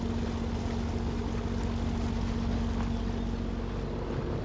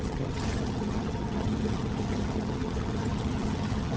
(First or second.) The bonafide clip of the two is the first